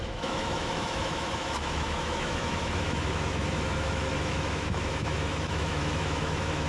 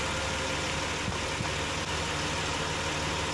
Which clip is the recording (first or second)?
second